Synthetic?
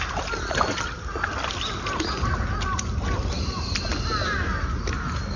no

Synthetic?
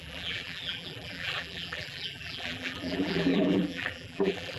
yes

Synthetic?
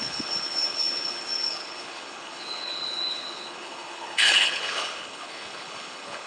yes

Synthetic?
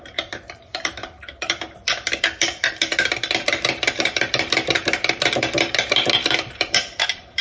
yes